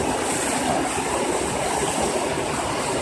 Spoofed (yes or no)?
no